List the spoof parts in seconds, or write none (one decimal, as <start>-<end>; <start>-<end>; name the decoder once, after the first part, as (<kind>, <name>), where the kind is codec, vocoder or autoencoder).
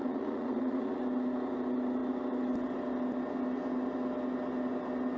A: 0.0-1.0 (vocoder, Vocos)